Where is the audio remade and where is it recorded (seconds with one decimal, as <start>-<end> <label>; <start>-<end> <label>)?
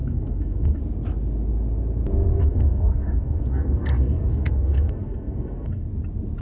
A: 0.0-0.8 remade; 0.8-2.3 recorded; 2.3-5.9 remade; 5.9-6.4 recorded